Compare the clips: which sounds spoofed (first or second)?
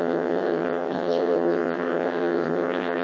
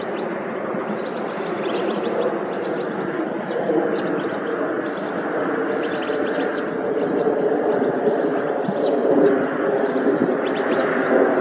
first